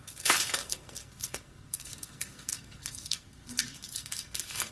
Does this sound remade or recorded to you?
remade